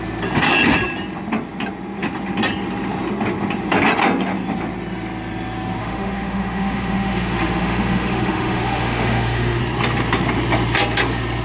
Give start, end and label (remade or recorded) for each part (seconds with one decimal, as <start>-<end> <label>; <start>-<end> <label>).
0.0-5.8 recorded; 5.8-9.6 remade; 9.6-11.4 recorded